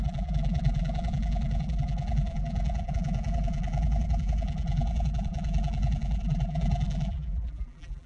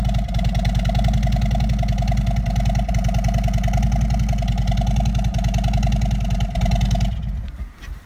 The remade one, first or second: first